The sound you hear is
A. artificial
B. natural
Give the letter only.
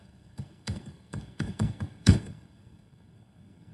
A